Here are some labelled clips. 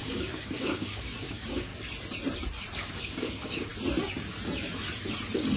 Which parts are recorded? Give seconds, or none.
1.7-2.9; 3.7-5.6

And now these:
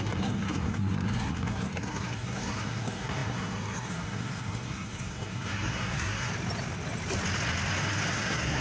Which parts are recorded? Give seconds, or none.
6.3-8.1

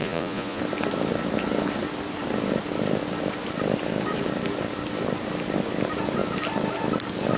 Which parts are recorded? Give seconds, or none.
0.6-7.4